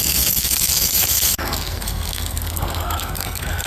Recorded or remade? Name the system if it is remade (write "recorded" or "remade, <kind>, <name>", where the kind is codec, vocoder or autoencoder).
remade, codec, SNAC